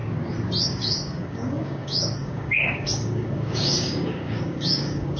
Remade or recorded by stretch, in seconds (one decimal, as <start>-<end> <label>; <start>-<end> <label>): 0.0-0.6 recorded; 0.6-5.2 remade